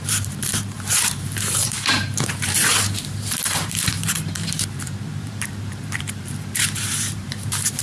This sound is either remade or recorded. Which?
remade